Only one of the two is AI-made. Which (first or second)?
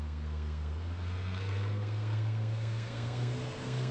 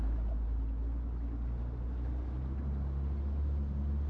first